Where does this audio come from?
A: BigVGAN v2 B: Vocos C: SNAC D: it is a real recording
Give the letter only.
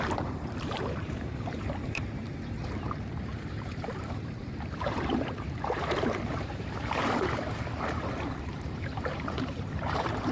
A